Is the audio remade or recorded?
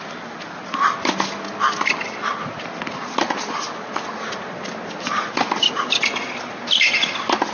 recorded